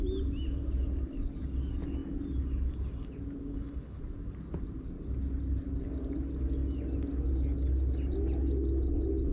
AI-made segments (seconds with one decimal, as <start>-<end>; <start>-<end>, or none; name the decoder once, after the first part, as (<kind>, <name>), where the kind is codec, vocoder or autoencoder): 3.5-4.0 (codec, HILCodec)